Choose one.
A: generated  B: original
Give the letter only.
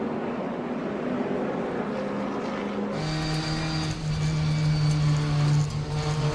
B